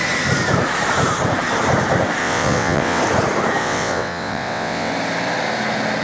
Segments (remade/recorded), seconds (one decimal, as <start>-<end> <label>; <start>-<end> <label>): 0.0-2.2 recorded; 2.2-3.0 remade; 3.0-3.6 recorded; 3.6-4.9 remade; 4.9-6.0 recorded

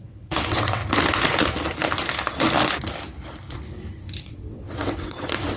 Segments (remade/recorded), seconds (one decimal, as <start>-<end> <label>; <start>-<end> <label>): 0.0-0.8 remade; 0.8-4.2 recorded; 4.2-5.6 remade

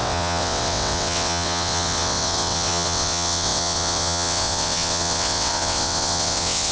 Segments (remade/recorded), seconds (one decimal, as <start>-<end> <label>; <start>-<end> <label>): 0.0-6.7 remade

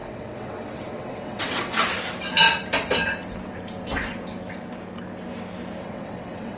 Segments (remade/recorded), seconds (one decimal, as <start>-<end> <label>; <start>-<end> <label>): 0.0-1.8 remade; 1.8-5.8 recorded; 5.8-6.6 remade

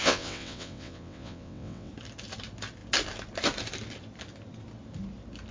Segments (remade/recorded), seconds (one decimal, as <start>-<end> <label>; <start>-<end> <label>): 0.0-1.9 remade; 1.9-5.5 recorded

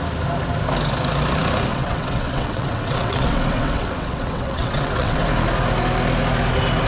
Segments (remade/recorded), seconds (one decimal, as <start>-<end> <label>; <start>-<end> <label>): 0.0-1.7 recorded; 1.7-5.2 remade; 5.2-6.9 recorded